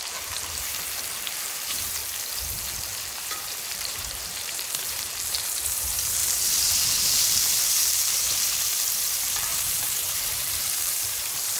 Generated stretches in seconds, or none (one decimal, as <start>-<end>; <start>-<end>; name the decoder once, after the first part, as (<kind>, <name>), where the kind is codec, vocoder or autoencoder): 0.0-2.0 (vocoder, BigVGAN v2); 3.2-11.6